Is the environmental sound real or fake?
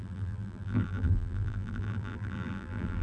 fake